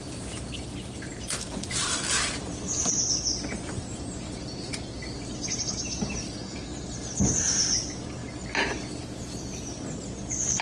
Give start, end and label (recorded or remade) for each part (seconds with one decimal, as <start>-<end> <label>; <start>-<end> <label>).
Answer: 0.0-8.2 remade; 8.2-8.9 recorded; 8.9-10.6 remade